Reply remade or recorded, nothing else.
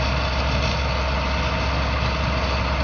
recorded